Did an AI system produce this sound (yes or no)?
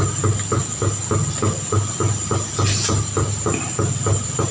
no